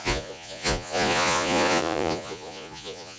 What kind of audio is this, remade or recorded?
remade